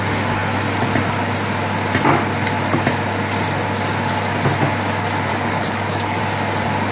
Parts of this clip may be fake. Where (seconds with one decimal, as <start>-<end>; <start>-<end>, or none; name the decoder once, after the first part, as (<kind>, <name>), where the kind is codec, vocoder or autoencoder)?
5.3-6.2 (codec, DAC)

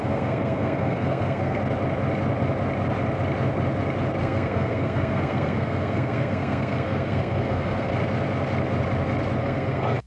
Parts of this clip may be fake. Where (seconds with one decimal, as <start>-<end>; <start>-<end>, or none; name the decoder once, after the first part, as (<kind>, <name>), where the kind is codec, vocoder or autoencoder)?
0.0-1.6 (codec, SNAC); 4.2-7.9; 9.4-10.1